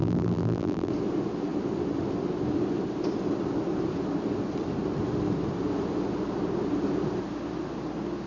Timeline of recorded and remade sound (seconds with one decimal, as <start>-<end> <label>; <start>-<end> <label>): 0.0-0.9 remade; 0.9-8.3 recorded